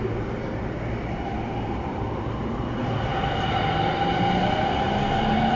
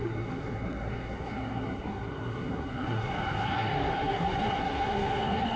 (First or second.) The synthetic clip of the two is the second